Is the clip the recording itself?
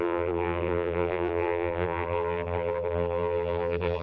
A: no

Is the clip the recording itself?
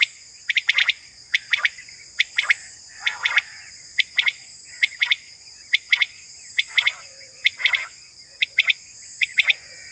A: no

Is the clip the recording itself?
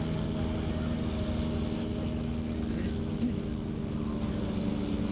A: yes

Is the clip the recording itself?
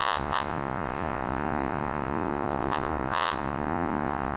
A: no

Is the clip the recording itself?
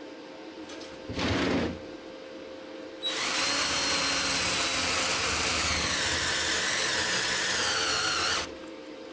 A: yes